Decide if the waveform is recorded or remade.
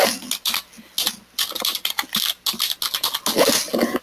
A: recorded